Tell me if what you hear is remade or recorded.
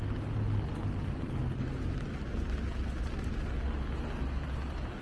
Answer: recorded